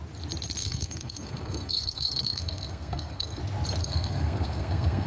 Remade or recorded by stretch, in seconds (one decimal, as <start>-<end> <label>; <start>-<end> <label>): 0.0-0.6 recorded; 0.6-3.4 remade; 3.4-3.8 recorded; 3.8-5.1 remade